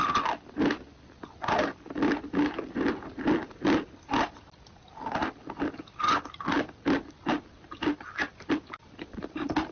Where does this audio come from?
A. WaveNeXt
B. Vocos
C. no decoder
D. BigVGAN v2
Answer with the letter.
C